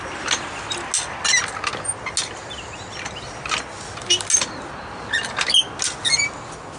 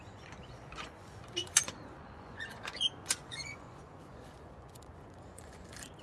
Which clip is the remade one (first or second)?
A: second